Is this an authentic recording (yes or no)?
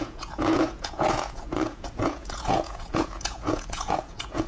no